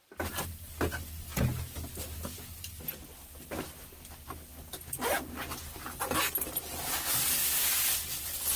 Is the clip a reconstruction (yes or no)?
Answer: no